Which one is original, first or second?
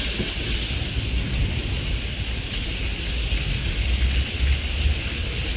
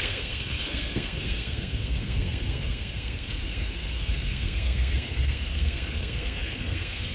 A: first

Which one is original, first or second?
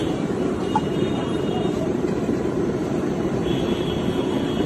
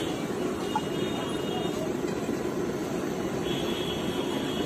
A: second